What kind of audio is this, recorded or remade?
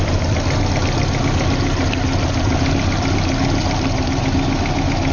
recorded